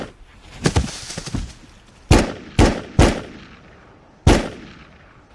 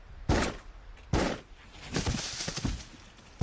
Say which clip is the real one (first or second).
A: first